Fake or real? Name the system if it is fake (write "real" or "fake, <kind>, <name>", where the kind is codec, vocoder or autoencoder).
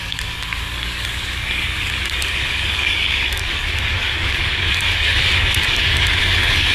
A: fake, codec, DAC